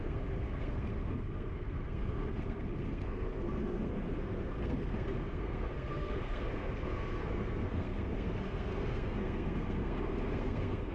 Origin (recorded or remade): remade